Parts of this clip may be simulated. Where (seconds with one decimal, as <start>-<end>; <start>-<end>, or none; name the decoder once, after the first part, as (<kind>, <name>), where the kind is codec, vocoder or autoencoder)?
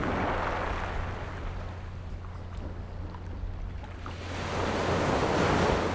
none